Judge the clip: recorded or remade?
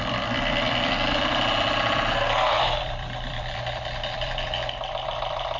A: remade